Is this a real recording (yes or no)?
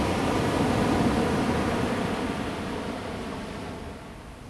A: yes